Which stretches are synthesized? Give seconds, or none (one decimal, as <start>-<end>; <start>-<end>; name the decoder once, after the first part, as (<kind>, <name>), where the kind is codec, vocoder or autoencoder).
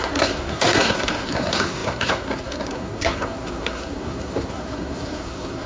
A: 0.0-5.7 (codec, SNAC)